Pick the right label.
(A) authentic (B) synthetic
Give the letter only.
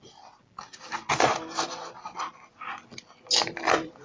A